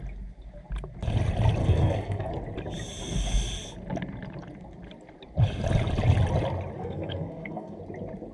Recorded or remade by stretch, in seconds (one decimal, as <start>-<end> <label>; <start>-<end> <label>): 0.0-1.6 recorded; 1.6-2.3 remade; 2.3-6.8 recorded; 6.8-7.8 remade; 7.8-8.3 recorded

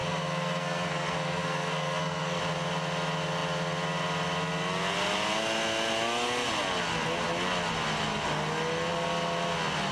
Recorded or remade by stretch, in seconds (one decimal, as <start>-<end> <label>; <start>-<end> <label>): 0.0-2.4 remade; 2.4-9.9 recorded